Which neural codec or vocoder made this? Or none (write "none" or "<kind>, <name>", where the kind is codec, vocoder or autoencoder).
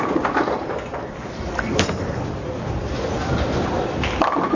none